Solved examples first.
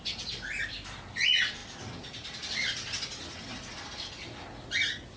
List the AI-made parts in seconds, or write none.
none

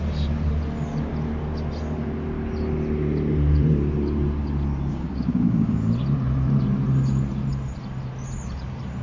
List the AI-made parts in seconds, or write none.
4.9-5.9 (codec, DAC)